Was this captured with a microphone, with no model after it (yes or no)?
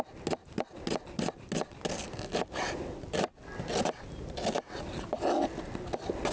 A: yes